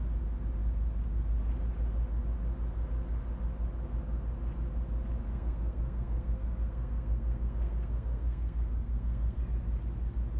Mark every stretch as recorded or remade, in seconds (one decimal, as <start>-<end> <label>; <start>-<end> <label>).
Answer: 0.0-5.2 recorded; 5.2-9.4 remade; 9.4-10.4 recorded